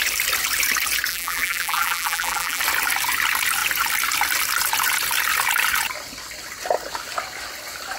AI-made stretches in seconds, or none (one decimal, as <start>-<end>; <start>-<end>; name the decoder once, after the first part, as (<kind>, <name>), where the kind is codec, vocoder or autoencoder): 1.1-2.6 (vocoder, BigVGAN v2)